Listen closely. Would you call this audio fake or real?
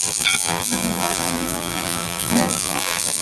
fake